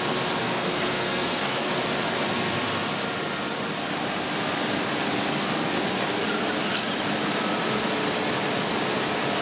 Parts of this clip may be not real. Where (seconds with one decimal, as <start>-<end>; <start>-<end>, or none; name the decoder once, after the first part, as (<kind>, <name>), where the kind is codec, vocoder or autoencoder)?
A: 0.4-1.7 (codec, SNAC)